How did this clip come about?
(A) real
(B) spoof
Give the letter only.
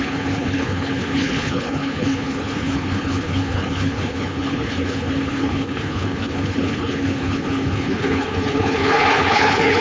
B